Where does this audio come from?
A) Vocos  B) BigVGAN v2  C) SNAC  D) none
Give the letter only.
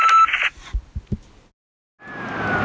D